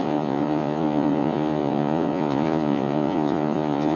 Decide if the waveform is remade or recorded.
remade